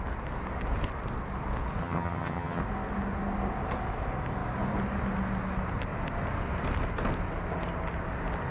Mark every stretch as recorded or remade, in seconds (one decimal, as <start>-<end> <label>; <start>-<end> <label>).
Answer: 0.0-1.8 recorded; 1.8-2.6 remade; 2.6-8.5 recorded